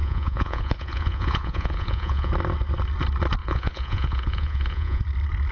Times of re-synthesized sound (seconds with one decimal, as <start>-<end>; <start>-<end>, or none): 0.0-2.3; 3.4-5.0